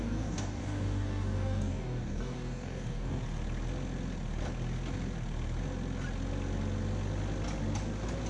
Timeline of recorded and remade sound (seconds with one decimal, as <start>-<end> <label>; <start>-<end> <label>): 0.0-3.2 remade; 3.2-8.3 recorded